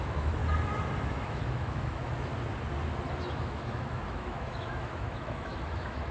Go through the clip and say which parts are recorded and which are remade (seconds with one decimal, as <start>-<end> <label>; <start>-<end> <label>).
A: 0.0-0.4 remade; 0.4-1.1 recorded; 1.1-2.3 remade; 2.3-3.2 recorded; 3.2-6.1 remade